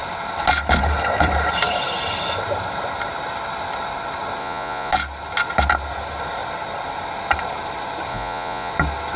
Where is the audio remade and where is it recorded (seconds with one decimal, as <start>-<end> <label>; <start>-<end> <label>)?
0.0-4.4 recorded; 4.4-4.9 remade; 4.9-8.1 recorded; 8.1-8.7 remade; 8.7-9.2 recorded